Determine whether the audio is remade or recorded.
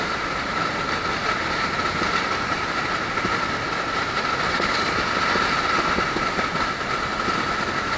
recorded